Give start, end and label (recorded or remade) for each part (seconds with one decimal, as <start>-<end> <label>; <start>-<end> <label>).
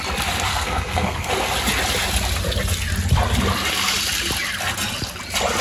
0.0-0.5 recorded; 0.5-1.3 remade; 1.3-5.6 recorded